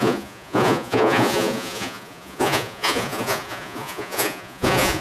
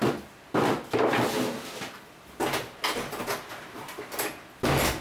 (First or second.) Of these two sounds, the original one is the second